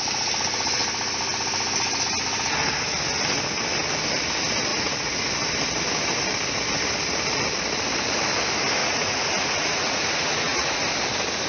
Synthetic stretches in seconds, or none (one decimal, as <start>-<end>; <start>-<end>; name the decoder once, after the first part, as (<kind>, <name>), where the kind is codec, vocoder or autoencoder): 4.7-5.3 (vocoder, Vocos); 8.8-10.8